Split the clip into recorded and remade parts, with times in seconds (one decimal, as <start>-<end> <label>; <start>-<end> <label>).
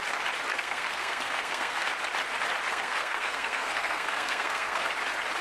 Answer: 0.0-0.5 recorded; 0.5-1.9 remade; 1.9-2.7 recorded; 2.7-4.9 remade; 4.9-5.4 recorded